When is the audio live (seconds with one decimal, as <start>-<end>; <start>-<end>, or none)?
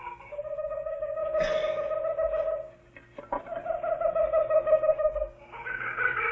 1.2-4.1